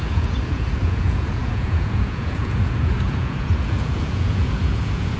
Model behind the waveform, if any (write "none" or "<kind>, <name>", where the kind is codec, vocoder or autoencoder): vocoder, Vocos